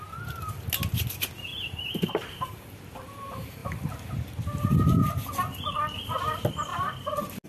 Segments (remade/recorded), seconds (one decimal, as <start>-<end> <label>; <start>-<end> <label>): 0.0-1.5 recorded; 1.5-3.0 remade; 3.0-7.5 recorded